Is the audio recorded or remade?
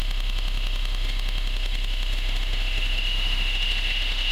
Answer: remade